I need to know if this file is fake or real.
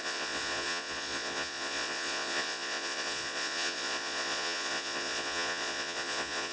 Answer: fake